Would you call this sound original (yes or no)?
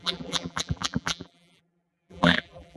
no